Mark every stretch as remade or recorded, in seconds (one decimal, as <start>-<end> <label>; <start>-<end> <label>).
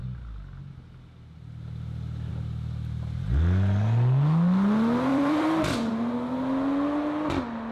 0.0-5.1 recorded; 5.1-5.9 remade; 5.9-7.7 recorded